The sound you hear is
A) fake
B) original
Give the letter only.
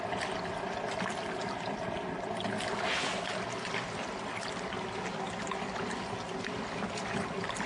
B